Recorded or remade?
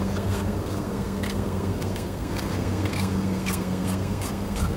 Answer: remade